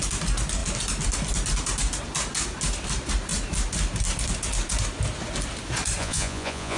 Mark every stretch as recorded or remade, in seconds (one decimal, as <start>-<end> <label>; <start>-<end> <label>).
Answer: 0.0-6.0 recorded; 6.0-6.8 remade